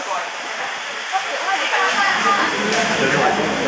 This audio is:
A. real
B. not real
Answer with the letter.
B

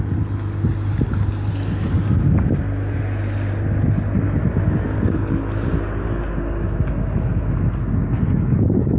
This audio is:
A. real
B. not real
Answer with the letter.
A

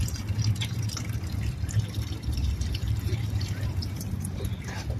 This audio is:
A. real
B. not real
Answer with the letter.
B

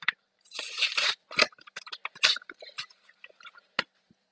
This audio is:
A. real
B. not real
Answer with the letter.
B